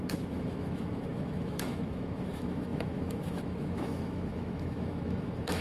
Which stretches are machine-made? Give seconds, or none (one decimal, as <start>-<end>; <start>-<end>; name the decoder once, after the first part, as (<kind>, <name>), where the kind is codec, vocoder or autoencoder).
0.0-5.6 (autoencoder, DAC-VAE)